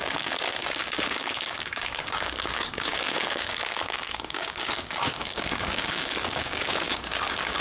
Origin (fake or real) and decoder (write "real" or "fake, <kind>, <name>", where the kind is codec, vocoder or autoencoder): fake, codec, DAC